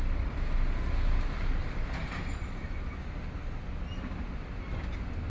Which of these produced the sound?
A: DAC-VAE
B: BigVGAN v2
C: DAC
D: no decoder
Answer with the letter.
D